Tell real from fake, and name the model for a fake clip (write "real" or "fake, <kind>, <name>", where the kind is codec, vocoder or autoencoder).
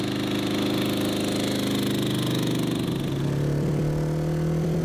real